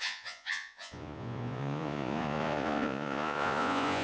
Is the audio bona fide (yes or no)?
no